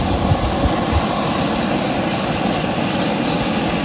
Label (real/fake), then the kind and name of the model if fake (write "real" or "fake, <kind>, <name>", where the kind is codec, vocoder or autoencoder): real